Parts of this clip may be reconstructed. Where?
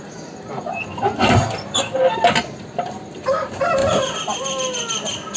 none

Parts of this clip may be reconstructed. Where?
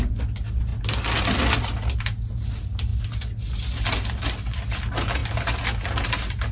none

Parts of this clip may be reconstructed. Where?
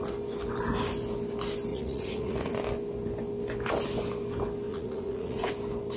1.7-2.5 (vocoder, Vocos); 4.7-5.5